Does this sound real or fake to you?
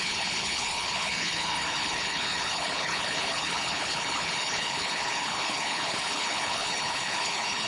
fake